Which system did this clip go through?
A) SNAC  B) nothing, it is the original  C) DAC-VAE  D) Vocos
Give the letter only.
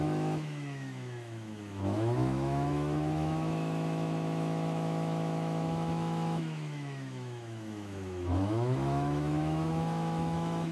C